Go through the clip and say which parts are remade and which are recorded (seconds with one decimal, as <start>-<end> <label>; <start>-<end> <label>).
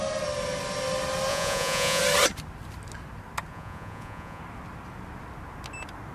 0.0-1.3 recorded; 1.3-2.0 remade; 2.0-3.5 recorded; 3.5-4.4 remade; 4.4-6.1 recorded